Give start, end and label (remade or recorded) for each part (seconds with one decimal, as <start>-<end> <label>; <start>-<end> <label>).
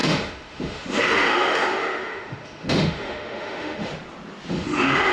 0.0-3.9 remade; 3.9-4.5 recorded; 4.5-5.1 remade